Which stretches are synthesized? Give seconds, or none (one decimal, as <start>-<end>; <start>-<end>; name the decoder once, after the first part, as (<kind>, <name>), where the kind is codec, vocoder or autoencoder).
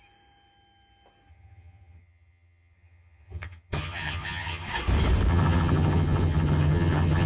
1.3-4.7 (vocoder, HiFi-GAN); 5.3-7.3